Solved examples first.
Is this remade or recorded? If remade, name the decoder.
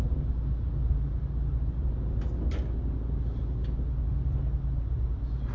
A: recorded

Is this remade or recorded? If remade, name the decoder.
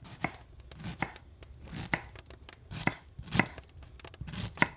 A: recorded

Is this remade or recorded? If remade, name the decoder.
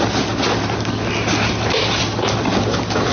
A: recorded